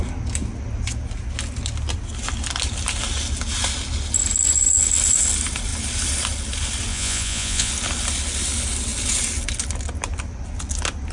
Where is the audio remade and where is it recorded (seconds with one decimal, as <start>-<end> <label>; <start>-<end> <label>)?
0.0-6.9 recorded; 6.9-7.7 remade; 7.7-11.1 recorded